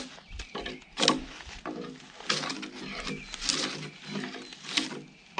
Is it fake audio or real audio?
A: real